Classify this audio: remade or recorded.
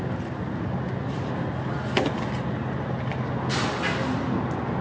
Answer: recorded